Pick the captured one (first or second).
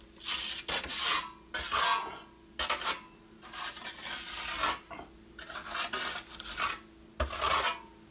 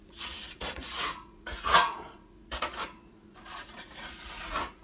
first